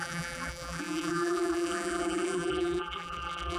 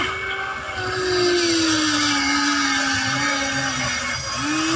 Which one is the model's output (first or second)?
first